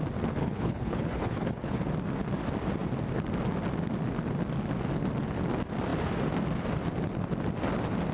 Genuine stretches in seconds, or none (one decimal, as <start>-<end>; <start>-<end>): 0.0-0.4; 1.8-8.1